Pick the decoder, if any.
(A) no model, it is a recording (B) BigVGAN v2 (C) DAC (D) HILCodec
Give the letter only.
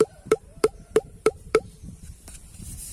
B